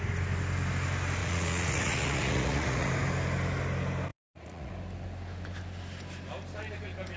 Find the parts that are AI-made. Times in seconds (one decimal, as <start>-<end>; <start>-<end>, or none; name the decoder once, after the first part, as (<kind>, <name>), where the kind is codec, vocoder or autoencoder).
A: 1.2-2.9 (vocoder, Vocos); 4.1-4.7